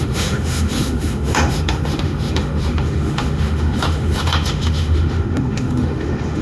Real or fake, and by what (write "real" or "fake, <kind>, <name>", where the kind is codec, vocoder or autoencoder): fake, autoencoder, DAC-VAE